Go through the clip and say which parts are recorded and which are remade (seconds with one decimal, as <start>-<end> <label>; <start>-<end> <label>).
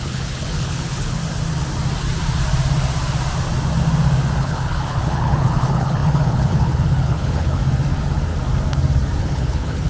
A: 0.0-1.2 remade; 1.2-4.4 recorded; 4.4-7.6 remade; 7.6-9.2 recorded; 9.2-9.9 remade